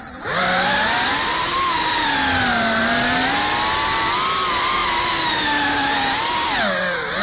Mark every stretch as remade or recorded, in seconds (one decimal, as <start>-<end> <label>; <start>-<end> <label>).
0.0-7.2 recorded

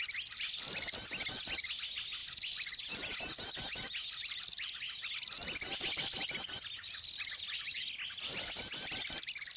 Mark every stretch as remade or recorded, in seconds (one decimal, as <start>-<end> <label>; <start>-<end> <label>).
0.0-9.6 recorded

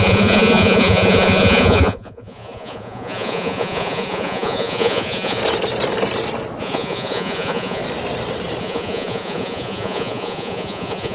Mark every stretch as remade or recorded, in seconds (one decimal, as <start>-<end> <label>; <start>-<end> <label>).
0.0-5.4 remade; 5.4-6.6 recorded; 6.6-7.8 remade; 7.8-8.6 recorded; 8.6-11.1 remade

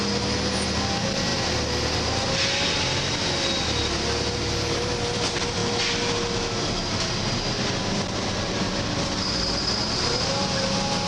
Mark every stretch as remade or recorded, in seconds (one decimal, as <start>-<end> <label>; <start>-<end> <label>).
0.0-11.1 recorded

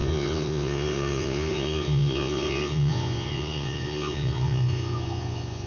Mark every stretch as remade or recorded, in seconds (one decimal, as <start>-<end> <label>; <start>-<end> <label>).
0.0-5.7 remade

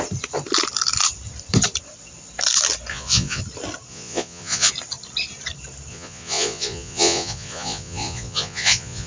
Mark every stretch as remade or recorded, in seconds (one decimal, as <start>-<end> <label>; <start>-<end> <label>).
0.0-2.9 recorded; 2.9-3.4 remade; 3.4-3.9 recorded; 3.9-4.7 remade; 4.7-5.9 recorded; 5.9-9.1 remade